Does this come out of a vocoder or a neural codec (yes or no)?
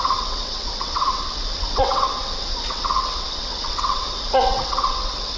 yes